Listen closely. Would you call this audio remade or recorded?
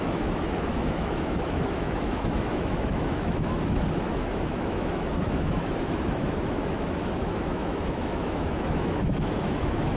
remade